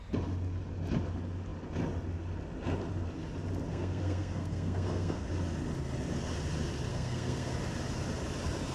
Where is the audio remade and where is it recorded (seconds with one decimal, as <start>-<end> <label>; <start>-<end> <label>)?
0.0-3.7 recorded; 3.7-5.3 remade; 5.3-6.9 recorded; 6.9-7.5 remade; 7.5-8.7 recorded

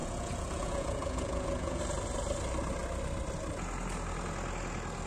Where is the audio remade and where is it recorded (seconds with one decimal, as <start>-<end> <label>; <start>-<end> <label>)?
0.0-1.8 remade; 1.8-5.1 recorded

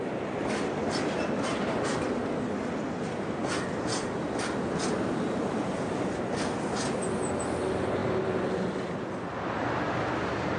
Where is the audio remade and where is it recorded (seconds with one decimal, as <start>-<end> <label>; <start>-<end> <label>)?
0.0-10.6 recorded

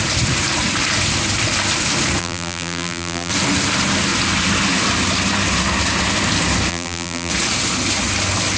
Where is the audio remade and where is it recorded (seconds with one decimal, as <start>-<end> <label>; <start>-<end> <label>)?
0.0-2.2 recorded; 2.2-3.3 remade; 3.3-6.7 recorded; 6.7-7.3 remade; 7.3-8.6 recorded

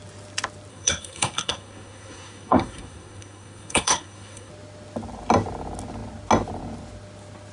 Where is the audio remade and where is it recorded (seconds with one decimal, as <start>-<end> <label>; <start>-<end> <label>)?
0.0-0.7 recorded; 0.7-4.5 remade; 4.5-7.5 recorded

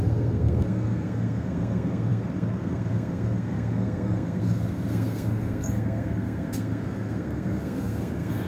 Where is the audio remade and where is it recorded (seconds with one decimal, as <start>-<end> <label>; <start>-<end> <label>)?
0.0-8.5 remade

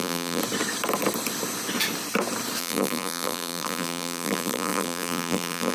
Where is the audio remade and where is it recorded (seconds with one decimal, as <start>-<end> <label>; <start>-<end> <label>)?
0.0-0.4 remade; 0.4-2.6 recorded; 2.6-5.7 remade